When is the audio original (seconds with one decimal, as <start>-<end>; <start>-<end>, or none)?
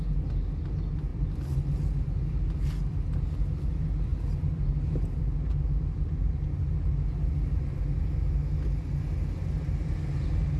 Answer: 0.0-10.6